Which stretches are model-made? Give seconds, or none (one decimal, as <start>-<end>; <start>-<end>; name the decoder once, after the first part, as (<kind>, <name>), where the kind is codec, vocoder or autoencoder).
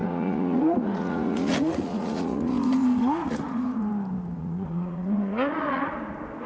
0.0-3.9 (vocoder, Vocos); 4.4-6.0